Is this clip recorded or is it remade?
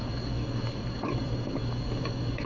remade